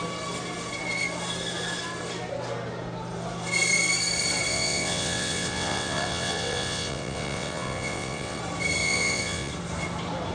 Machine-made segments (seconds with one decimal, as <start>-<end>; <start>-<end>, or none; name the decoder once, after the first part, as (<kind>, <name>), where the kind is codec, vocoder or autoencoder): 4.5-8.4 (vocoder, WaveNeXt); 8.8-9.5